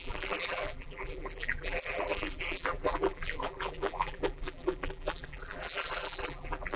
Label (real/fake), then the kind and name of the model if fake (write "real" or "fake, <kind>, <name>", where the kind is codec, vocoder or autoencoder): fake, vocoder, BigVGAN v2